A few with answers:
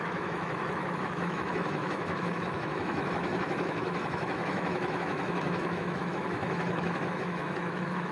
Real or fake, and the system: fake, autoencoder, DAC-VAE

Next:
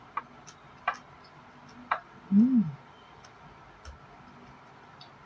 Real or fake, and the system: real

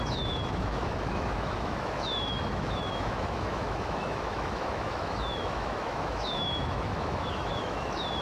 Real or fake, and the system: fake, autoencoder, DAC-VAE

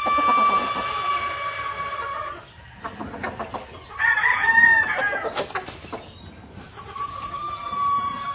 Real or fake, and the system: real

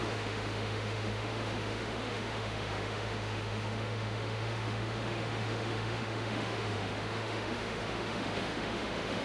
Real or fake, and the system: fake, autoencoder, DAC-VAE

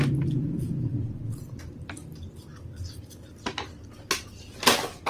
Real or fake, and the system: real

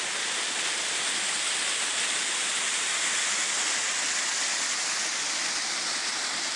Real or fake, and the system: real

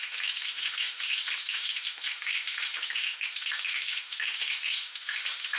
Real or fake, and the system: fake, autoencoder, DAC-VAE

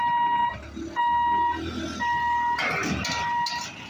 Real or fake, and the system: real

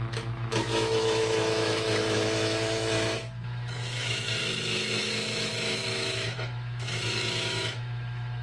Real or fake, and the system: fake, autoencoder, DAC-VAE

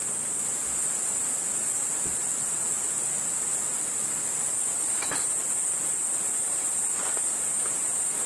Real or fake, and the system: real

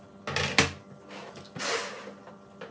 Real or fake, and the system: real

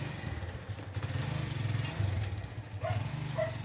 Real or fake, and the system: real